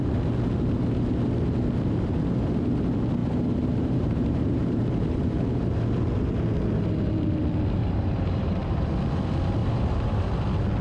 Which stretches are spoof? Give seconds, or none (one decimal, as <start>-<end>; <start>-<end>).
3.2-5.7; 7.8-8.9; 9.6-10.3